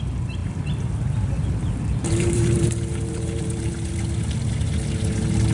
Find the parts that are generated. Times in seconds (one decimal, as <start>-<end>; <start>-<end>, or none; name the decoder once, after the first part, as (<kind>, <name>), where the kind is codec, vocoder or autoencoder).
0.4-3.7 (vocoder, BigVGAN v2)